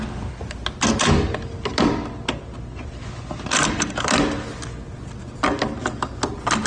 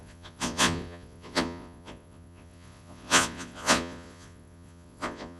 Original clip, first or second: first